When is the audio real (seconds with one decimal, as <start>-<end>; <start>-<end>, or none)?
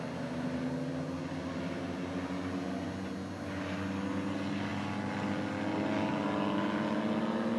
0.0-7.6